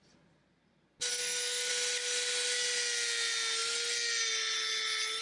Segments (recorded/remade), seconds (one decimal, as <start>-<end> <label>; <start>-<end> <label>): 0.0-1.1 recorded; 1.1-1.7 remade; 1.7-5.2 recorded